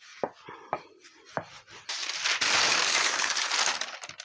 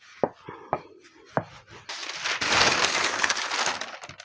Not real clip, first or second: first